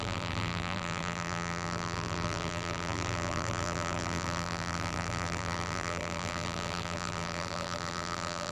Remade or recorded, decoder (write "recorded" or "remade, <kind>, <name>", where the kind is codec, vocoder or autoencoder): remade, vocoder, BigVGAN v2